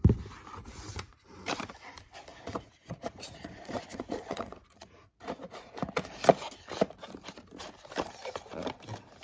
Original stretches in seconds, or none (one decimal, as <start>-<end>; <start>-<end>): 0.0-0.6; 1.2-2.3; 5.9-9.2